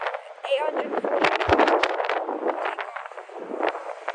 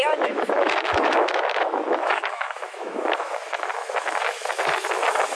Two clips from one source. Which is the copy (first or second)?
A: second